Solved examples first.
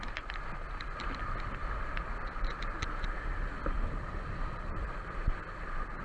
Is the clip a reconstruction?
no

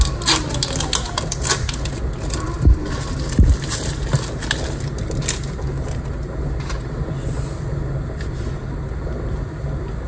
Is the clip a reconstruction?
no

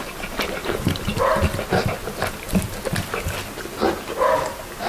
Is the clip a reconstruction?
no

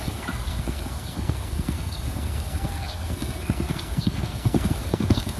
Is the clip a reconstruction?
yes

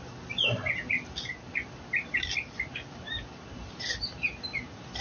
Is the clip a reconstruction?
no